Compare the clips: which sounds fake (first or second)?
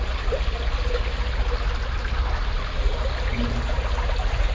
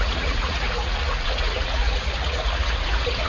second